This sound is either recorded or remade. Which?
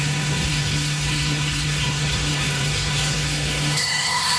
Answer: remade